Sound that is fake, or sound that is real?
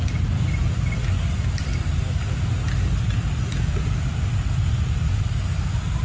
real